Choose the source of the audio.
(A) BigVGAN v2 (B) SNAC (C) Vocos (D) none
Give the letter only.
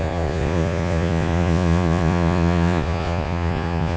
C